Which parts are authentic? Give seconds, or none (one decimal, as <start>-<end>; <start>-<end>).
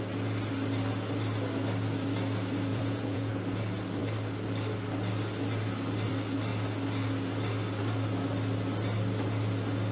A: 0.0-2.7; 3.3-9.9